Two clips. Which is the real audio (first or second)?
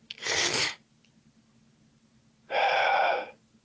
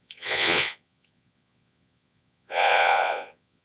first